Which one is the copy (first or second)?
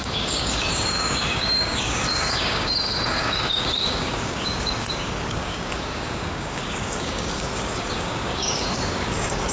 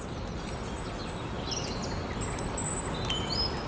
first